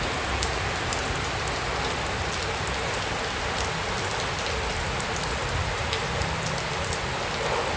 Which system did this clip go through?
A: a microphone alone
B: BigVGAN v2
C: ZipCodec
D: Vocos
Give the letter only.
A